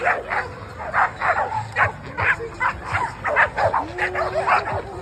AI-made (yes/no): no